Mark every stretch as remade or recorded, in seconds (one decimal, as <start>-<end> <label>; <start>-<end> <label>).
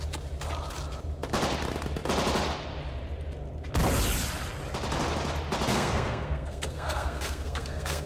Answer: 0.0-5.7 recorded; 5.7-8.1 remade